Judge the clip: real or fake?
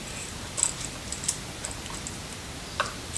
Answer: real